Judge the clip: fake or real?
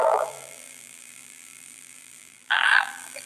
fake